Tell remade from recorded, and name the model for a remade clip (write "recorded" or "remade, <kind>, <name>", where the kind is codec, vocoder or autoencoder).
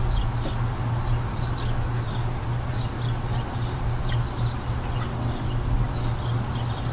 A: recorded